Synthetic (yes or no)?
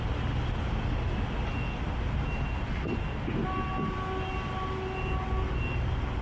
no